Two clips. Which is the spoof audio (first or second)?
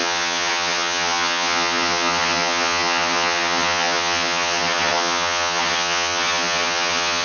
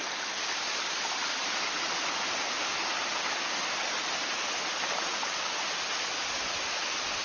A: first